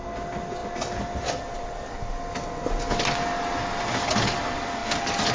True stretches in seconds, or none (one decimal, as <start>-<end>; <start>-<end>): 0.0-5.3